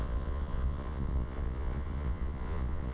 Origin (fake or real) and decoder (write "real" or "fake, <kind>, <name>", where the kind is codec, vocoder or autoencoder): fake, vocoder, Vocos